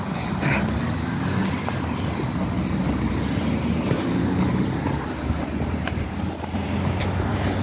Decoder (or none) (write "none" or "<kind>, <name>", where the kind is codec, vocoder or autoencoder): none